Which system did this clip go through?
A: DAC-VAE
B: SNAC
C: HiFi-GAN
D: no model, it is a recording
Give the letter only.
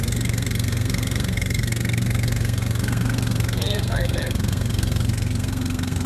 B